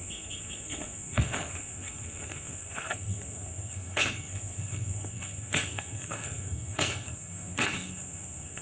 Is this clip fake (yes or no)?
yes